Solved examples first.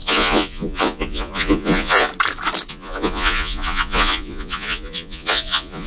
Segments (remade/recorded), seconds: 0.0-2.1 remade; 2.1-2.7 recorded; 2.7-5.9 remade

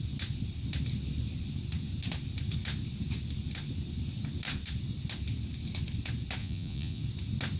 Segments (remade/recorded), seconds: 0.0-6.4 recorded; 6.4-7.0 remade; 7.0-7.6 recorded